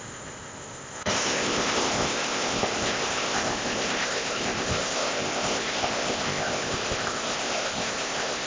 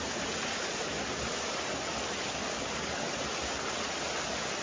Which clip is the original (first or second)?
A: second